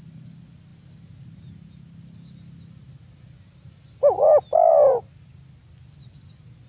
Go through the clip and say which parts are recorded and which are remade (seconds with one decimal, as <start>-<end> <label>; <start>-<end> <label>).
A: 0.0-6.7 recorded